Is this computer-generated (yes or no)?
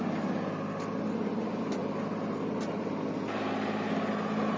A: no